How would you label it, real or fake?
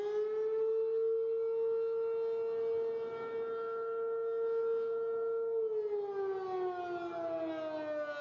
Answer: real